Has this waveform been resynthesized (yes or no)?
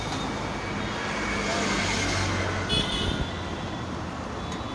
no